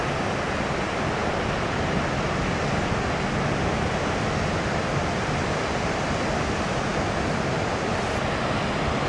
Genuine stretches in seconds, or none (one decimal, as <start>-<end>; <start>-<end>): 0.0-9.1